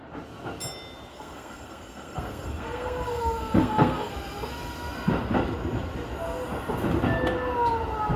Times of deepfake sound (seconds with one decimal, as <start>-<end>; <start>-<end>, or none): 1.1-4.1